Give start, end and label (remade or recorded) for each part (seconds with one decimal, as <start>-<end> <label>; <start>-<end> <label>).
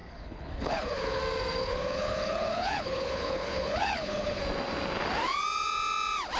0.0-1.2 remade; 1.2-1.6 recorded; 1.6-4.4 remade; 4.4-6.4 recorded